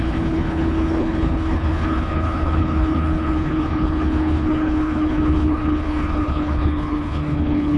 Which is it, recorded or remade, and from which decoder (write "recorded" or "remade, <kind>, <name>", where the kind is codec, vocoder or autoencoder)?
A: remade, codec, HILCodec